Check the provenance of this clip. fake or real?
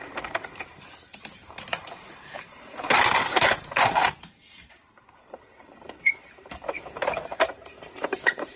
fake